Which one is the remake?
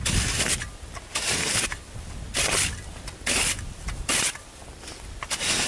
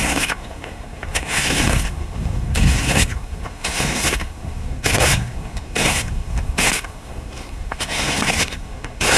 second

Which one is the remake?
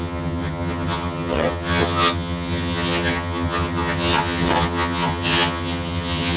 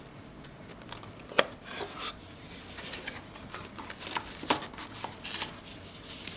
first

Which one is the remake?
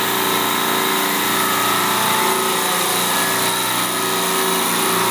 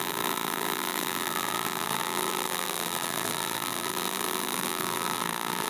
second